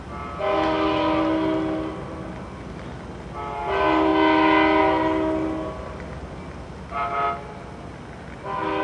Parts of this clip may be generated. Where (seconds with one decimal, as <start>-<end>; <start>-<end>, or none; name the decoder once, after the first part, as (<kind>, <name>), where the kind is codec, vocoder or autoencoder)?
none